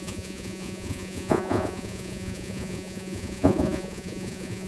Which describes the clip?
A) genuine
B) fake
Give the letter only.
B